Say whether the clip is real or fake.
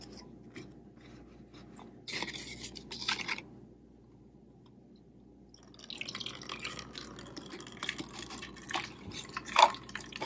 real